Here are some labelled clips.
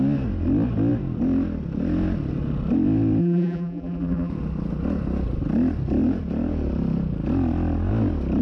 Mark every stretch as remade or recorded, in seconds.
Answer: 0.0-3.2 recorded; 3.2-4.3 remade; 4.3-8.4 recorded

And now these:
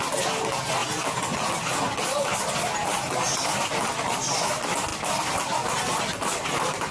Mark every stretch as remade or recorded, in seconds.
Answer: 0.0-0.8 recorded; 0.8-4.5 remade; 4.5-4.9 recorded; 4.9-6.0 remade; 6.0-6.9 recorded

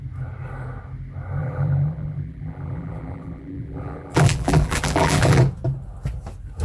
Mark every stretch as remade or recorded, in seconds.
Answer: 0.0-1.4 recorded; 1.4-5.4 remade; 5.4-6.6 recorded

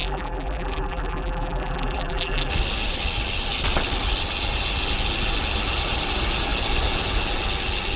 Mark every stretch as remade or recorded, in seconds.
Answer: 0.0-2.5 remade; 2.5-8.0 recorded

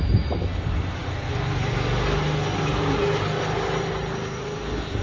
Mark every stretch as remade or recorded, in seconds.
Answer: 0.0-5.0 recorded

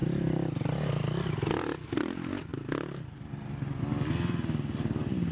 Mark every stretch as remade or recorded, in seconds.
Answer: 0.0-5.3 recorded

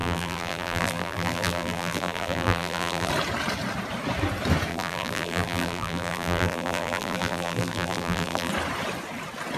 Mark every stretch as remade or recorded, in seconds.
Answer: 0.0-3.1 remade; 3.1-4.7 recorded; 4.7-8.5 remade; 8.5-9.6 recorded

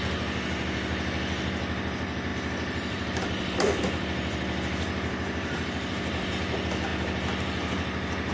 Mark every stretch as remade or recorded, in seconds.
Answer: 0.0-2.3 recorded; 2.3-6.3 remade; 6.3-8.3 recorded